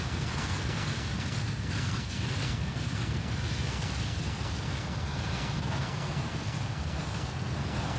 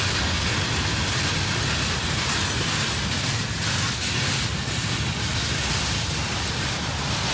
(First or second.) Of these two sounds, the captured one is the second